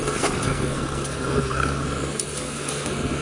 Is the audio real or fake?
fake